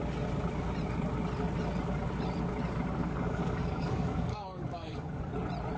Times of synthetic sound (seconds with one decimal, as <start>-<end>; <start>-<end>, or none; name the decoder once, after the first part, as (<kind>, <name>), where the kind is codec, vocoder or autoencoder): 3.0-5.3 (codec, DAC)